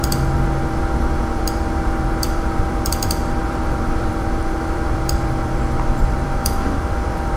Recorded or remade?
remade